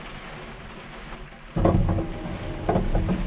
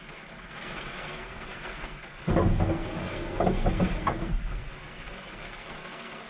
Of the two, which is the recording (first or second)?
first